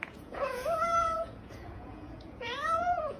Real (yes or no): no